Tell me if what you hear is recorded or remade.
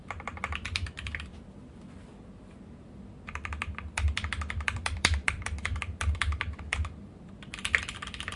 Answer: remade